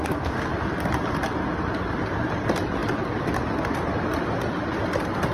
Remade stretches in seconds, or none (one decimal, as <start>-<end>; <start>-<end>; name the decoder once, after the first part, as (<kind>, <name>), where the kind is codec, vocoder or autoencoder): 0.0-0.5 (codec, SNAC)